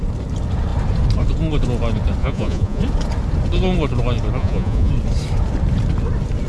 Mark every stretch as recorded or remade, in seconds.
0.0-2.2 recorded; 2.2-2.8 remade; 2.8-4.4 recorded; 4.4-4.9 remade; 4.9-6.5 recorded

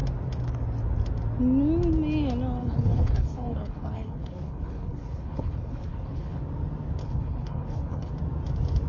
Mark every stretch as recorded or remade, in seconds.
0.0-2.6 recorded; 2.6-6.4 remade; 6.4-7.0 recorded; 7.0-8.1 remade; 8.1-8.9 recorded

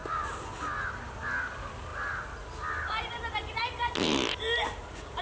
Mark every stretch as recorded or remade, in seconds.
0.0-5.2 recorded

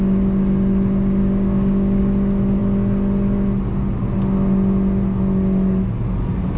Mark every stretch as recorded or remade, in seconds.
0.0-1.2 recorded; 1.2-2.0 remade; 2.0-6.6 recorded